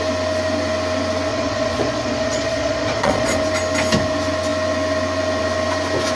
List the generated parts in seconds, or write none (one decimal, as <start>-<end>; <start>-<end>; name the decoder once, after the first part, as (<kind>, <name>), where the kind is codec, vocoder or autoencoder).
1.3-3.3 (vocoder, Vocos)